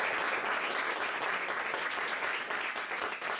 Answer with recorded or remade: recorded